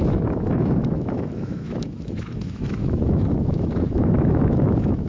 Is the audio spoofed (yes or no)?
yes